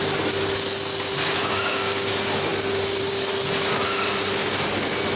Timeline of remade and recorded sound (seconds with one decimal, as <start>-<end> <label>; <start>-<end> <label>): 0.0-1.4 recorded; 1.4-2.1 remade; 2.1-5.2 recorded